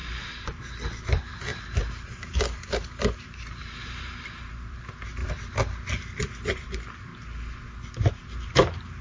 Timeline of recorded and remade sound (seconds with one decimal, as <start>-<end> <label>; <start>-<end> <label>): 0.0-0.9 recorded; 0.9-5.2 remade; 5.2-6.5 recorded; 6.5-7.1 remade; 7.1-8.1 recorded; 8.1-9.0 remade